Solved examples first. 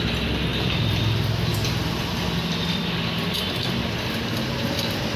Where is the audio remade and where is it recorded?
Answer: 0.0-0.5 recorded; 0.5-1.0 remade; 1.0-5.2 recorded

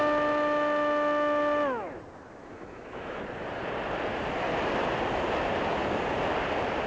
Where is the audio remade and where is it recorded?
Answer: 0.0-2.4 recorded; 2.4-3.2 remade; 3.2-6.9 recorded

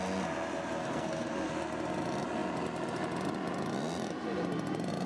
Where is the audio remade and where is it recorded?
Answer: 0.0-0.8 recorded; 0.8-1.5 remade; 1.5-5.1 recorded

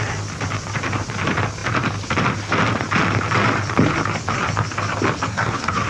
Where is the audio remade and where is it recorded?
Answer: 0.0-5.3 recorded; 5.3-5.9 remade

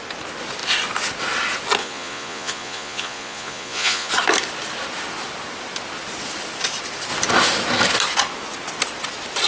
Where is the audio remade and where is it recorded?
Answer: 0.0-1.8 recorded; 1.8-4.1 remade; 4.1-9.5 recorded